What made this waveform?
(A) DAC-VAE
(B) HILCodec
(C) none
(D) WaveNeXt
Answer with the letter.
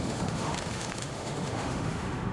A